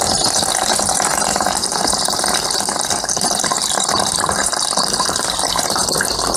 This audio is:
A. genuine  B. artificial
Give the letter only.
B